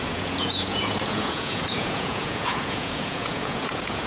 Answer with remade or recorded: remade